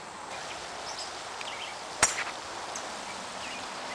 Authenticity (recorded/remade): recorded